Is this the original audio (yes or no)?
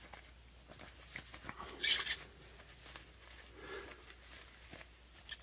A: yes